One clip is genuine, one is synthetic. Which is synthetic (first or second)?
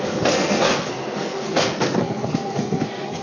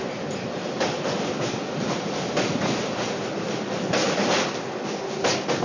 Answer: first